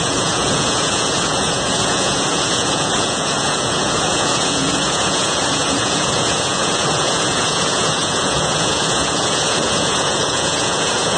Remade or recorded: remade